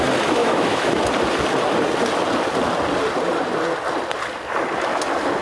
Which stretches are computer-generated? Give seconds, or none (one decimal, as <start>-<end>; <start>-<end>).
0.4-1.0